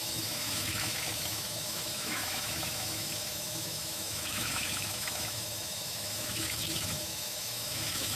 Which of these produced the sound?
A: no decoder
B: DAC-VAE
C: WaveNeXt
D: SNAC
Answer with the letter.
B